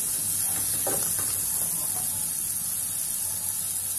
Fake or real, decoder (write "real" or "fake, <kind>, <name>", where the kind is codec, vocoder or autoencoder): real